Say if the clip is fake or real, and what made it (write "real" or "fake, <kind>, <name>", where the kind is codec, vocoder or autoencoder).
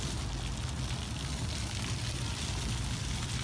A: real